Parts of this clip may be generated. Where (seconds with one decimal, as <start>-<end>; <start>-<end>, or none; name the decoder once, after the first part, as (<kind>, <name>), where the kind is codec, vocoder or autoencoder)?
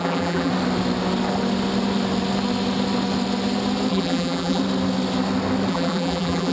0.0-0.5 (vocoder, BigVGAN v2); 3.9-4.6; 5.7-6.5